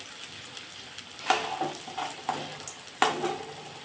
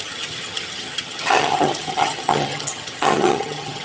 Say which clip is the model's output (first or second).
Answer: second